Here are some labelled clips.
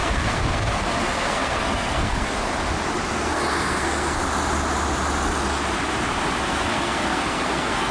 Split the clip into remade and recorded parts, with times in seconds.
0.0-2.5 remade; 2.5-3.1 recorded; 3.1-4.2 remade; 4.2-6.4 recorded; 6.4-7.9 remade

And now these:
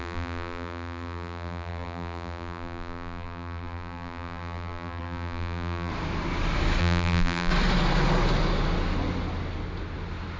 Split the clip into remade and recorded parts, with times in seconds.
0.0-5.9 remade; 5.9-6.8 recorded; 6.8-7.5 remade; 7.5-10.4 recorded